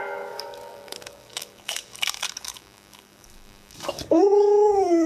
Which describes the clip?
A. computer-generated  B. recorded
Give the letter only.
A